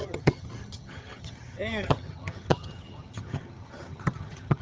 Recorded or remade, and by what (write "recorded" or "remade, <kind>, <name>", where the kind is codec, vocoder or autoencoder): remade, vocoder, HiFi-GAN